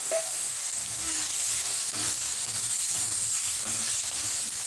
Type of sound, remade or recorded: remade